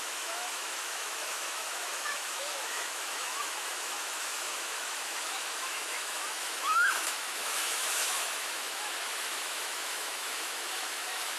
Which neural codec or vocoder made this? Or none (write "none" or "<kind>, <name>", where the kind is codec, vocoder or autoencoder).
autoencoder, DAC-VAE